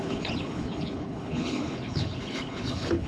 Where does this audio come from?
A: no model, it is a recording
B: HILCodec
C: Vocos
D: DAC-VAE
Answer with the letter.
B